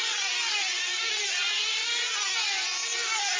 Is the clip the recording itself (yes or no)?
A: yes